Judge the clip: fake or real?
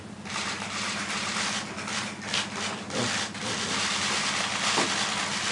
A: real